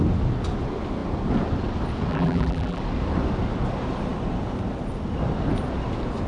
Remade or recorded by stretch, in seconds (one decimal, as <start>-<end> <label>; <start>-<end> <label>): 0.0-2.1 recorded; 2.1-2.8 remade; 2.8-6.3 recorded